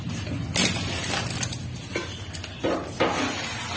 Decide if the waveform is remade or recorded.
recorded